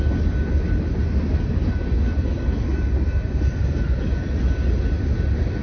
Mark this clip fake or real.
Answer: real